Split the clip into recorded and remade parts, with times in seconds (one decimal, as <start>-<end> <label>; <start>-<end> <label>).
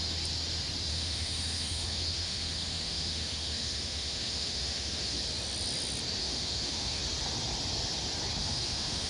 0.0-0.9 recorded; 0.9-5.2 remade; 5.2-6.2 recorded; 6.2-7.0 remade; 7.0-8.4 recorded; 8.4-9.1 remade